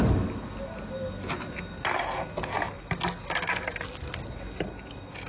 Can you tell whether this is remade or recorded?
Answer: recorded